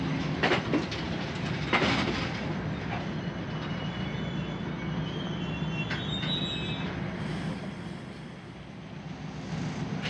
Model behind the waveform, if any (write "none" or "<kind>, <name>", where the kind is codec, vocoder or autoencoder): none